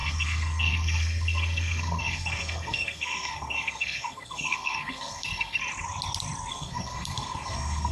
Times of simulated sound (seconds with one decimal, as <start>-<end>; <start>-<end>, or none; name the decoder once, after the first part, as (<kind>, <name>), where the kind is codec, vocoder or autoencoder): 0.0-5.6 (codec, SNAC); 6.5-7.9